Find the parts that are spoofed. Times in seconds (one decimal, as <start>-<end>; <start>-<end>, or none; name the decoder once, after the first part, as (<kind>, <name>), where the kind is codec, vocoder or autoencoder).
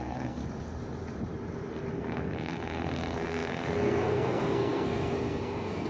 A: 0.0-0.4 (codec, SNAC); 1.9-5.9